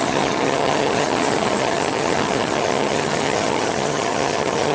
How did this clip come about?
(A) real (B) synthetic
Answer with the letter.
B